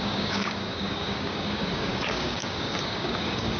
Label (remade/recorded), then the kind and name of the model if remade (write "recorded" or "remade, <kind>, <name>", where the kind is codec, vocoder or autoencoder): remade, codec, DAC